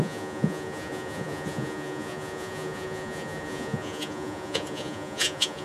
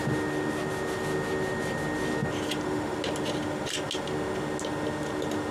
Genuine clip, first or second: second